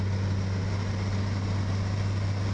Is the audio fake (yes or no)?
no